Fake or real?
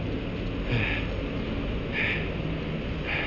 real